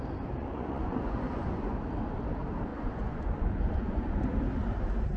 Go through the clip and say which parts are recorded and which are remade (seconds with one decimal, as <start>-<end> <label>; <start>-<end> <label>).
0.0-0.4 recorded; 0.4-1.8 remade; 1.8-2.7 recorded; 2.7-4.2 remade; 4.2-5.2 recorded